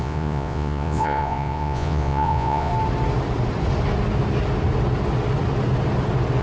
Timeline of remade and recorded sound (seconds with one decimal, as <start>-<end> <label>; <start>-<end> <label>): 0.0-2.7 remade; 2.7-6.4 recorded